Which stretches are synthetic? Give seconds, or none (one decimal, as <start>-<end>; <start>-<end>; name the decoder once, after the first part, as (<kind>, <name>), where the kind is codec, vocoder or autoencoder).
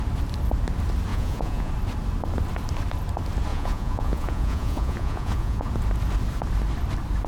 1.1-1.7 (vocoder, Vocos); 3.5-5.7